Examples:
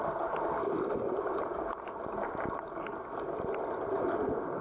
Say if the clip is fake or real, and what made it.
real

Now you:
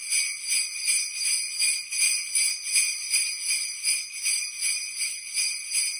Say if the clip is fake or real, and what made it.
real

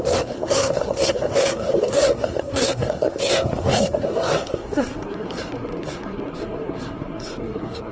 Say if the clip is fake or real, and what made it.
fake, codec, SNAC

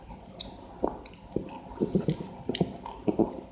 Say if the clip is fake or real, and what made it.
real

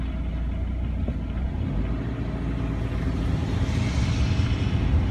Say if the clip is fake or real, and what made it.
real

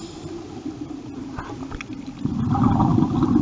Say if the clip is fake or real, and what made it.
real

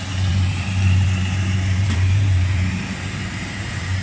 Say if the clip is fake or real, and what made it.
fake, vocoder, BigVGAN v2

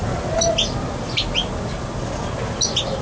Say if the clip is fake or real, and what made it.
real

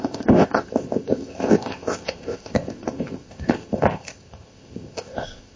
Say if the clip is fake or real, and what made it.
fake, codec, ZipCodec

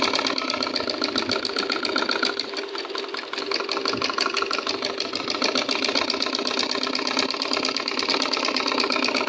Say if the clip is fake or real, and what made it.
real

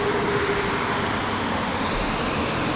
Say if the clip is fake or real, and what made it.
real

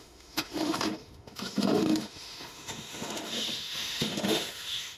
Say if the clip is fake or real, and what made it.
fake, autoencoder, DAC-VAE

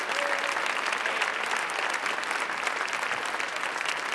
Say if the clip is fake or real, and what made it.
real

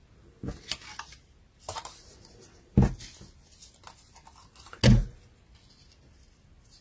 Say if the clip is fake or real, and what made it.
real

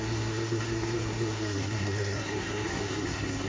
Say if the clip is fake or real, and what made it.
fake, codec, SNAC